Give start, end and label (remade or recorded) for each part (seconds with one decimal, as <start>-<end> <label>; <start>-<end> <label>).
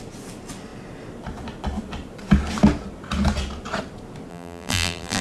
0.0-4.3 recorded; 4.3-5.2 remade